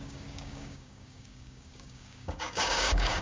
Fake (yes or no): yes